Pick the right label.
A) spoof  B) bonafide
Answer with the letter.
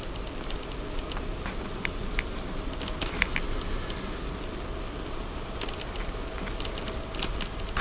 B